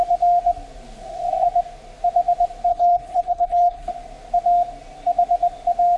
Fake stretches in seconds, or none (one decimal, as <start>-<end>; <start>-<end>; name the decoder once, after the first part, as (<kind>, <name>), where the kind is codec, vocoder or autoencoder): 2.7-3.9 (codec, HILCodec)